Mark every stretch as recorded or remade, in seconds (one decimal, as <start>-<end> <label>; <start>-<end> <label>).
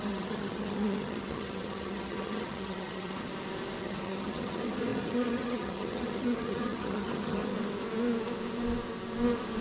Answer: 0.0-3.3 remade; 3.3-3.8 recorded; 3.8-7.5 remade; 7.5-9.6 recorded